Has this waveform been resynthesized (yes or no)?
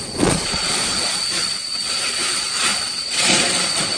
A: yes